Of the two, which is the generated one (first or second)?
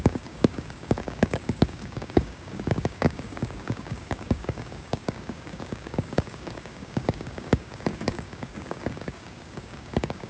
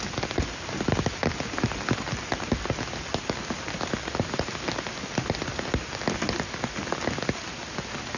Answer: first